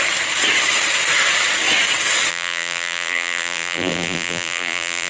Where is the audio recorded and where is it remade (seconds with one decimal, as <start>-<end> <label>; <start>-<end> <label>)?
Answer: 0.0-2.3 recorded; 2.3-5.1 remade